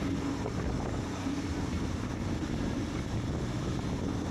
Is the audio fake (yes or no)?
no